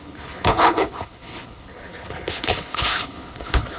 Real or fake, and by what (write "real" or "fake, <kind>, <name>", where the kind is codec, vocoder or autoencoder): fake, codec, HILCodec